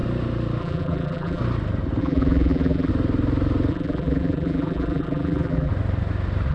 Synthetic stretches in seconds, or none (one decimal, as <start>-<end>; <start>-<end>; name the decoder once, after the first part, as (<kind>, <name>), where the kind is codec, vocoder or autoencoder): 0.6-1.4 (vocoder, BigVGAN v2); 2.0-2.9; 3.7-5.7